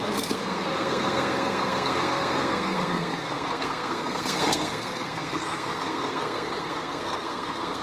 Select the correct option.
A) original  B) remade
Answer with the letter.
B